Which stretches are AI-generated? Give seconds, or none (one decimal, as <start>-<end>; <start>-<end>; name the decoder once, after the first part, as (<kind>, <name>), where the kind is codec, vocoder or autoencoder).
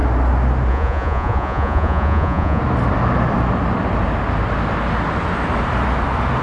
0.7-2.6 (vocoder, Vocos)